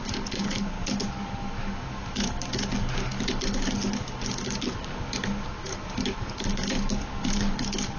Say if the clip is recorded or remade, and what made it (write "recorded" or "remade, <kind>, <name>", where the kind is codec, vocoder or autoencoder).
remade, codec, DAC